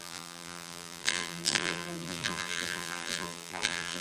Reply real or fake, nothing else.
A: fake